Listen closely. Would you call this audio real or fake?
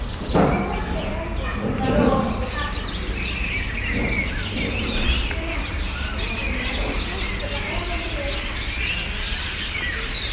real